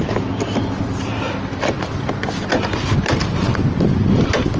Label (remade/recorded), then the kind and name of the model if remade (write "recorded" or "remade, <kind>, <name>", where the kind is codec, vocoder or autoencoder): recorded